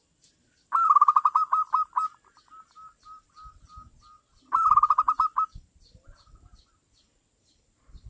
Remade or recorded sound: recorded